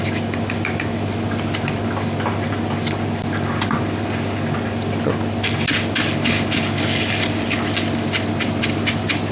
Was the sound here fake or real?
real